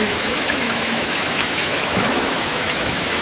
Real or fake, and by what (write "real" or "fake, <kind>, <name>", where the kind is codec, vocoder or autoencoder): fake, autoencoder, DAC-VAE